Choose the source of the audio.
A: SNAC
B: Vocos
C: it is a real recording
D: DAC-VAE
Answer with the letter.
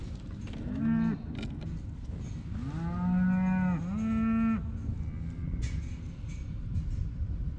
C